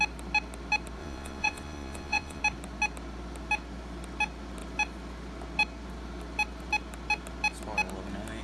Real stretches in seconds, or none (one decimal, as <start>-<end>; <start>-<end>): 0.0-1.0; 2.4-8.4